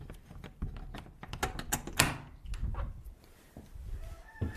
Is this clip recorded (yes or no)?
yes